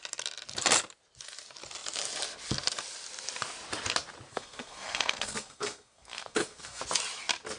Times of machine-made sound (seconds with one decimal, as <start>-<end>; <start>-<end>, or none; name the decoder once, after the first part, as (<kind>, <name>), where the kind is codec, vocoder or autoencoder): 4.3-6.8 (codec, SNAC)